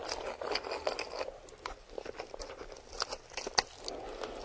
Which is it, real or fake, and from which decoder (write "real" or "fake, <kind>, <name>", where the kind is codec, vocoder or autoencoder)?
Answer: real